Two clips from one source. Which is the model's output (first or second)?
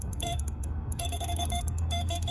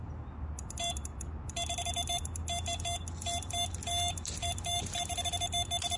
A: first